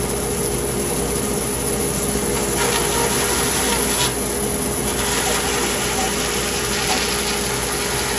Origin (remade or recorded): recorded